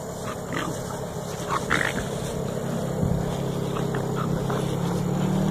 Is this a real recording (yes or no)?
yes